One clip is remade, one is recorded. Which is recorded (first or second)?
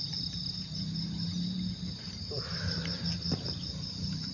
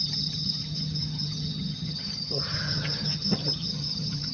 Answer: first